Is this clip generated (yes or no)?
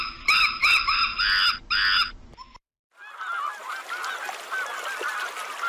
no